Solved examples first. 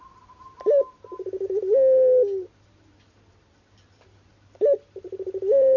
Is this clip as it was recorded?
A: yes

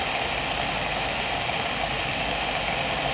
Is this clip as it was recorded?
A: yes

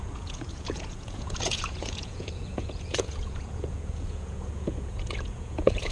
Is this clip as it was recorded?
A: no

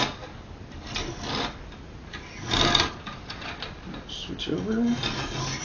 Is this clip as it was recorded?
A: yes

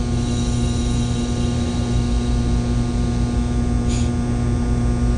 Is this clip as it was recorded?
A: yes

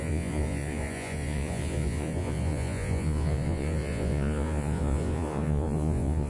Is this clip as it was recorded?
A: no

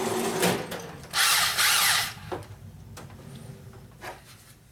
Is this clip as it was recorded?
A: yes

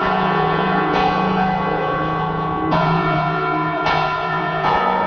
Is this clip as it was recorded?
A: no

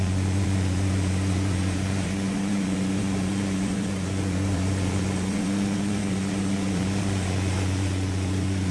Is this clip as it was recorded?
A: no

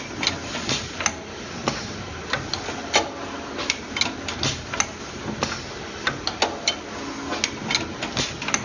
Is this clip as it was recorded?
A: yes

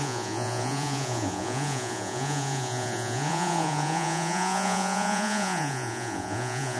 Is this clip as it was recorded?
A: no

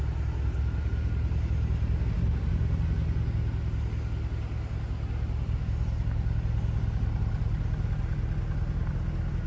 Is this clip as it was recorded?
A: yes